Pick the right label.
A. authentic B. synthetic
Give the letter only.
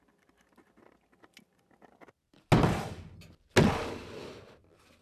A